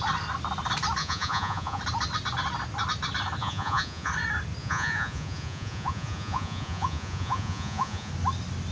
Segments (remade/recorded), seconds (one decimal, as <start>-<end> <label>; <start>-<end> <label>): 0.0-1.0 recorded; 1.0-1.8 remade; 1.8-3.4 recorded; 3.4-4.1 remade; 4.1-4.6 recorded; 4.6-8.1 remade; 8.1-8.7 recorded